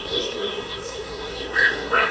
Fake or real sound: fake